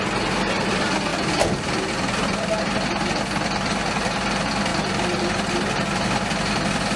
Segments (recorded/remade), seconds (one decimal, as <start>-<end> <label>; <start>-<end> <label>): 0.0-1.1 recorded; 1.1-2.6 remade; 2.6-4.7 recorded; 4.7-5.5 remade; 5.5-7.0 recorded